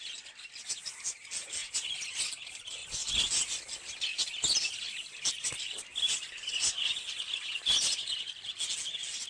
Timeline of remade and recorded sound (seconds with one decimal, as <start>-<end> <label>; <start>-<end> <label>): 0.0-9.3 recorded